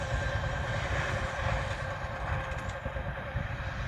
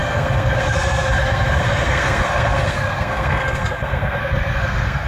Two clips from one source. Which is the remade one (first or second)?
second